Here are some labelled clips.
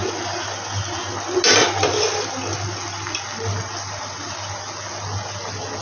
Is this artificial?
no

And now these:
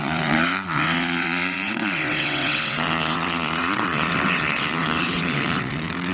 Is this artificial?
yes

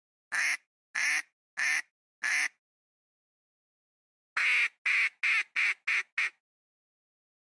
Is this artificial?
no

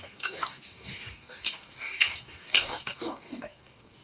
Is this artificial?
yes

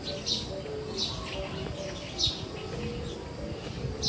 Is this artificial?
no